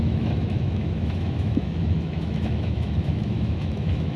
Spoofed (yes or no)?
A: yes